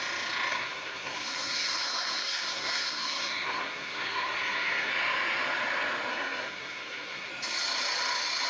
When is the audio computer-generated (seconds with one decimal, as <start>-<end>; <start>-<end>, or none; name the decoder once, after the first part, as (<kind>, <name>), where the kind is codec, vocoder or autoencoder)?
0.5-4.9 (codec, SNAC); 6.1-7.3